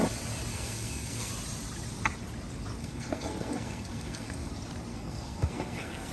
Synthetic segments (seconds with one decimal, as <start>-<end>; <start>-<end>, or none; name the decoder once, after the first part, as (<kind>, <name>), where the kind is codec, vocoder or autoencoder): 0.5-1.3 (codec, SNAC); 2.8-4.5; 4.9-6.1